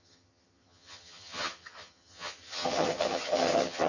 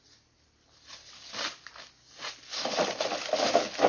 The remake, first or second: first